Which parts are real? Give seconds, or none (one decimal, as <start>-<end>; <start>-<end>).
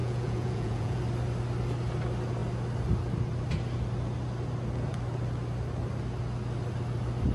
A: 1.0-7.3